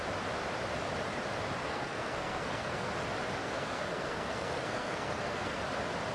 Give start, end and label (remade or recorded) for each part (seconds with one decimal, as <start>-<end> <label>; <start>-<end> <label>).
0.0-1.6 recorded; 1.6-2.9 remade; 2.9-3.4 recorded; 3.4-5.6 remade; 5.6-6.1 recorded